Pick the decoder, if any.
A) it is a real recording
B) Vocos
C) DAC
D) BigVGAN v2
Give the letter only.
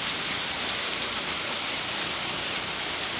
A